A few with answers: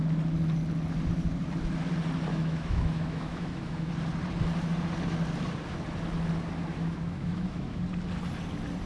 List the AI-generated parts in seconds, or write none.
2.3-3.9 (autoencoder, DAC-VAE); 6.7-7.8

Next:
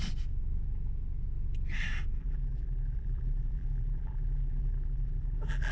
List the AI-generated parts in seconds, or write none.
2.2-5.7 (vocoder, BigVGAN v2)

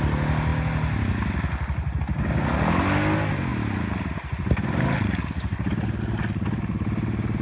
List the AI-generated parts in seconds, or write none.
none